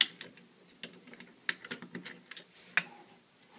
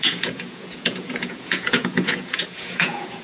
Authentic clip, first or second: first